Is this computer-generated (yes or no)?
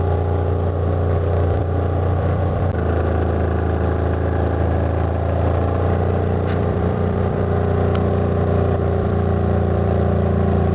yes